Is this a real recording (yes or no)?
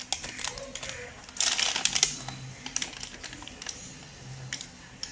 yes